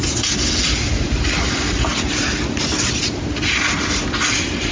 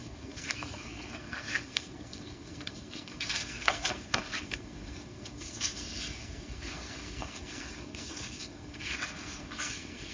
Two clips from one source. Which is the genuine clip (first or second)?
first